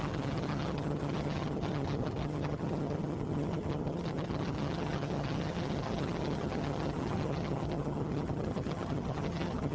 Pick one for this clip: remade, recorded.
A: remade